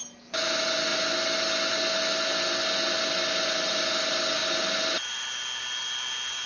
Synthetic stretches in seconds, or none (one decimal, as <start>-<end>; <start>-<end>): none